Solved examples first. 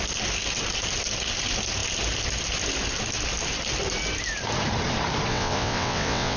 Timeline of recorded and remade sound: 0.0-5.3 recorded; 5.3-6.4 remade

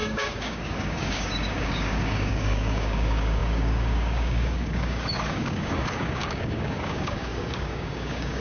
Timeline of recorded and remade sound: 0.0-8.4 remade

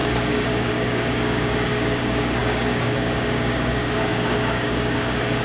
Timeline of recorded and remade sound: 0.0-5.4 remade